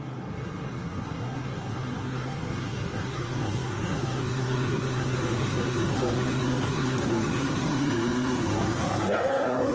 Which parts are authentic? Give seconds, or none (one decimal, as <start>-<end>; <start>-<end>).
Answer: none